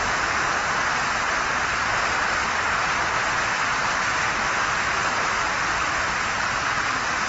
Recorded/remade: recorded